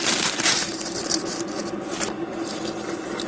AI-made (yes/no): no